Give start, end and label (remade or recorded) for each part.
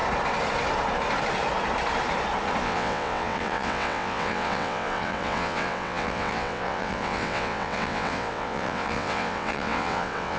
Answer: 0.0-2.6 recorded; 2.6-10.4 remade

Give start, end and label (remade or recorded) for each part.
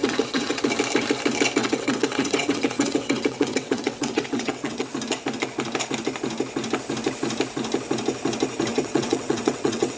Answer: 0.0-0.6 remade; 0.6-1.6 recorded; 1.6-4.9 remade; 4.9-8.7 recorded; 8.7-10.0 remade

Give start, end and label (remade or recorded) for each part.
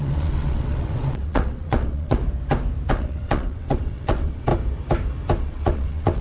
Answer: 0.0-2.2 remade; 2.2-2.9 recorded; 2.9-4.5 remade; 4.5-5.4 recorded; 5.4-6.2 remade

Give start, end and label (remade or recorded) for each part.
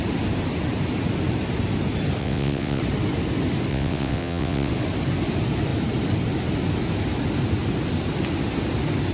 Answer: 0.0-2.2 recorded; 2.2-2.8 remade; 2.8-3.7 recorded; 3.7-4.7 remade; 4.7-9.1 recorded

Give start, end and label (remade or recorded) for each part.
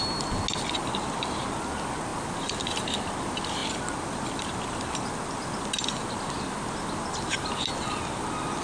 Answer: 0.0-8.6 recorded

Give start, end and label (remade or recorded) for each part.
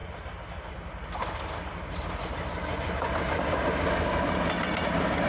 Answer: 0.0-5.3 recorded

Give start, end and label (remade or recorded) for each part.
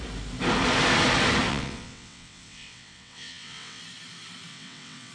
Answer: 0.0-1.5 recorded; 1.5-3.8 remade; 3.8-4.5 recorded; 4.5-5.1 remade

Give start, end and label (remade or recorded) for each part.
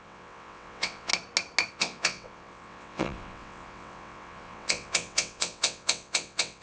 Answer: 0.0-1.1 remade; 1.1-1.7 recorded; 1.7-6.6 remade